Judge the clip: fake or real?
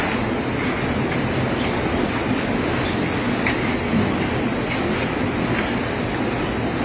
real